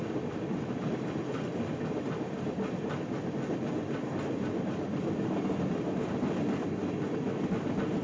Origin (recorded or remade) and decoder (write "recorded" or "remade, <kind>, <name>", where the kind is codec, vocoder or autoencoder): recorded